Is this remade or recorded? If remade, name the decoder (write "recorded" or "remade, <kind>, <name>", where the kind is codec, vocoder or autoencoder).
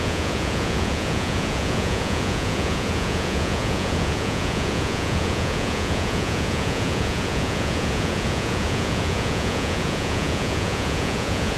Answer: remade, vocoder, Vocos